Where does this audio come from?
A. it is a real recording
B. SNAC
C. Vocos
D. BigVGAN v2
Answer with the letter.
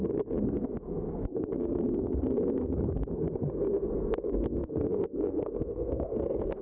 B